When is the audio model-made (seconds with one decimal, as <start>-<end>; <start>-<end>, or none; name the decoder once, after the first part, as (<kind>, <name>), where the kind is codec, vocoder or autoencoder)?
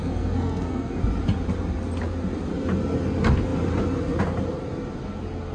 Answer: 0.0-1.0 (codec, SNAC)